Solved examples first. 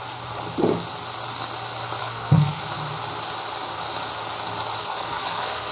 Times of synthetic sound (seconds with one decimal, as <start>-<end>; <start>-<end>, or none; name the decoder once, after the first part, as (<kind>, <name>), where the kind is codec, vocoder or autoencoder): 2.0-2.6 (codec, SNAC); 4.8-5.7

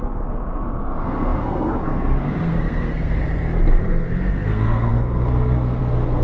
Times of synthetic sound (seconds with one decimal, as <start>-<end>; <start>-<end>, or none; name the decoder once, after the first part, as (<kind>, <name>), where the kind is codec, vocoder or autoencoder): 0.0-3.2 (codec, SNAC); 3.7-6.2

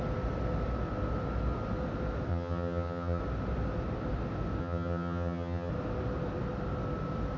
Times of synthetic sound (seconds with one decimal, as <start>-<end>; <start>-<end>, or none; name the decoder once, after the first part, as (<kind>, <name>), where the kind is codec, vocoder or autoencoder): 2.3-3.2 (vocoder, HiFi-GAN); 4.6-5.7

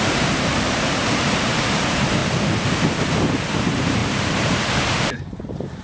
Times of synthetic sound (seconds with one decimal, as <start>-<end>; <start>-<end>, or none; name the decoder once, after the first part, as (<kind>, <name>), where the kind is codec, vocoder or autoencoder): 0.0-2.2 (vocoder, BigVGAN v2); 3.4-5.8